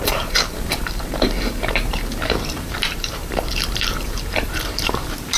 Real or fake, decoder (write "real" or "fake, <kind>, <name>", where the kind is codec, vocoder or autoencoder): fake, vocoder, BigVGAN v2